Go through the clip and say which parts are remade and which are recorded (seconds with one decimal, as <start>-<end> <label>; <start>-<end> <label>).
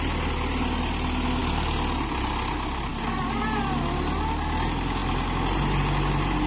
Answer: 0.0-6.5 recorded